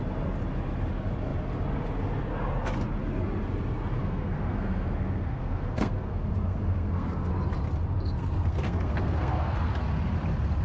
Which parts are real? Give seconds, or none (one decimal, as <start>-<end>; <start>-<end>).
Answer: 0.0-4.0; 7.3-8.2; 9.7-10.6